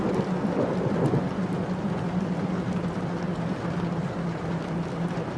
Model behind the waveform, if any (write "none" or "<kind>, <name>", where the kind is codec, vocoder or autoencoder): none